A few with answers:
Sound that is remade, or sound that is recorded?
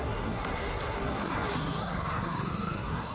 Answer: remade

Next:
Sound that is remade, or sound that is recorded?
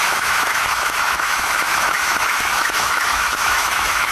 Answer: remade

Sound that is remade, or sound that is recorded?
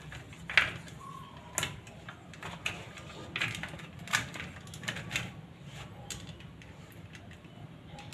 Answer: recorded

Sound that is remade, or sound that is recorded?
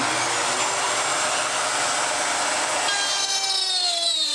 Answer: recorded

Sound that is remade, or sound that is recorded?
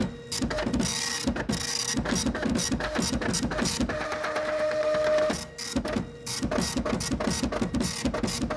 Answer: recorded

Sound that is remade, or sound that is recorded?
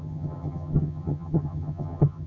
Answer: remade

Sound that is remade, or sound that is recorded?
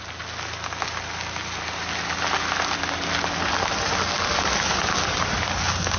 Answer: recorded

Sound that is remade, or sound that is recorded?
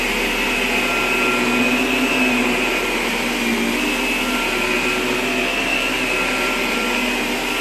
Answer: recorded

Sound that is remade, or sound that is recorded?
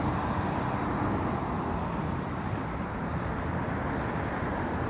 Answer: recorded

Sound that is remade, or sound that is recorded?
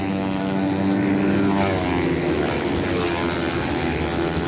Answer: recorded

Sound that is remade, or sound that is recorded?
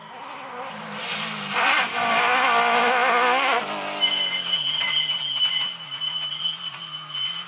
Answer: recorded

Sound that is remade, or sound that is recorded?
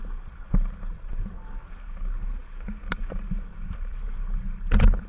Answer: recorded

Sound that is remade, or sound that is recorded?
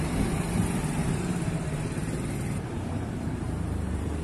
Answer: remade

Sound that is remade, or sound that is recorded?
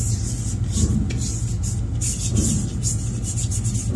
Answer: recorded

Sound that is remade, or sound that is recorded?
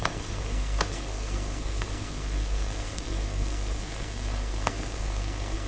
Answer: remade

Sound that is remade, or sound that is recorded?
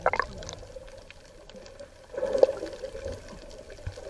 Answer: recorded